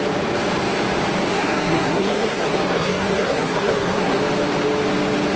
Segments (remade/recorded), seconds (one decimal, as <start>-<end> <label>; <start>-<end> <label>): 0.0-1.3 recorded; 1.3-4.2 remade; 4.2-5.4 recorded